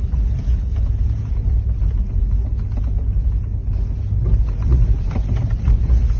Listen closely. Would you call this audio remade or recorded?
recorded